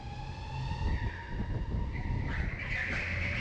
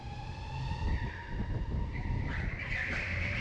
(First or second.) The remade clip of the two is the second